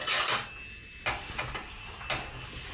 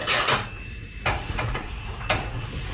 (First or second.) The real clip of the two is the first